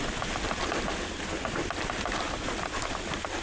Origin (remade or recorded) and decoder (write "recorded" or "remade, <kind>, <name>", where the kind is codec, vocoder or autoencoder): recorded